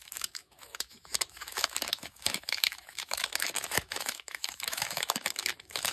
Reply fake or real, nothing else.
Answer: fake